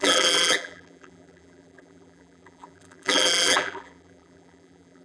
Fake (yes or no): yes